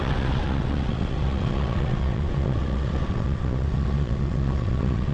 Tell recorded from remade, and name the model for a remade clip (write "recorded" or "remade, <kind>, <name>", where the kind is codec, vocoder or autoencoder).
remade, vocoder, WaveNeXt